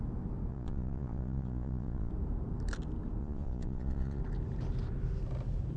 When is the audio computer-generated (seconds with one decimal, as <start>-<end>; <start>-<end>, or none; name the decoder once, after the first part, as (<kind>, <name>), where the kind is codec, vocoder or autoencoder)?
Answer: 0.5-2.1 (vocoder, Vocos); 3.2-4.2